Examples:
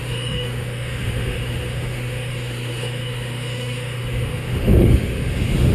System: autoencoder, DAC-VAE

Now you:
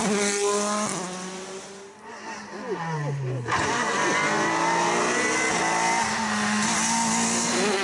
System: none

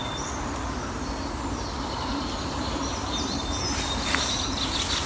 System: none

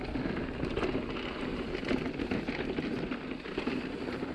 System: none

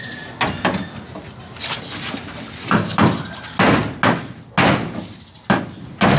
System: none